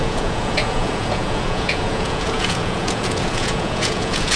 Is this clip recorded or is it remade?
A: remade